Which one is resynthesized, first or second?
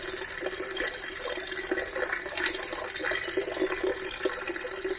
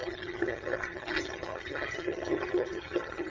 second